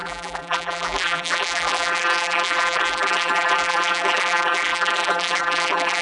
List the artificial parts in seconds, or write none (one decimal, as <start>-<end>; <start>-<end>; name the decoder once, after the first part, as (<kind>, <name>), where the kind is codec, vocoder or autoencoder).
0.0-6.0 (vocoder, BigVGAN v2)